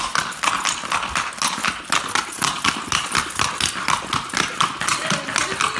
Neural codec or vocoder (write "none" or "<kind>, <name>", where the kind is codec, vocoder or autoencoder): none